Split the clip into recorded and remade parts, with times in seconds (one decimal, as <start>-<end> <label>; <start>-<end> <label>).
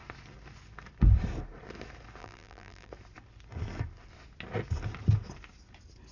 0.0-2.2 recorded; 2.2-2.9 remade; 2.9-6.1 recorded